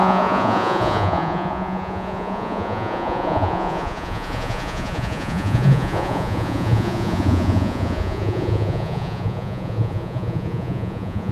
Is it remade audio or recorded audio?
remade